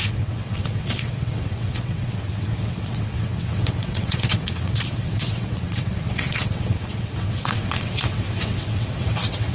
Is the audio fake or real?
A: fake